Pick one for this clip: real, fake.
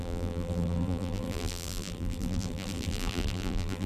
fake